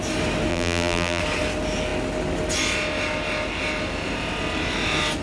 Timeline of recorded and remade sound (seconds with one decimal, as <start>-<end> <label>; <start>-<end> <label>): 0.0-0.5 recorded; 0.5-1.2 remade; 1.2-5.2 recorded